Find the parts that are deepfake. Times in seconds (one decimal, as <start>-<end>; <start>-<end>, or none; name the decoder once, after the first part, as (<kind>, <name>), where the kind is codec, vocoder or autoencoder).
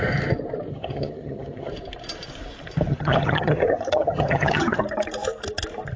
0.7-1.7 (vocoder, HiFi-GAN); 2.9-4.8